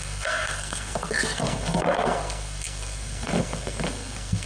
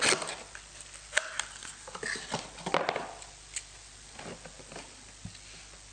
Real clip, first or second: second